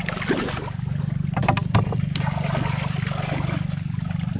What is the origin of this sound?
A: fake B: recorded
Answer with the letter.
B